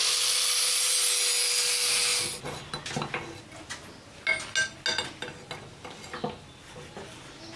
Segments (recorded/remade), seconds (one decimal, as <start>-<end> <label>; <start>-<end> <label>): 0.0-7.6 recorded